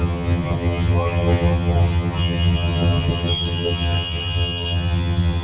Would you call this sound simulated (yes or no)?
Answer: yes